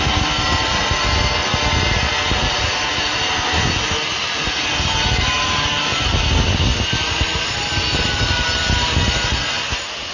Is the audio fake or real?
real